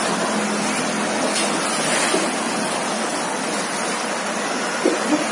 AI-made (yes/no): no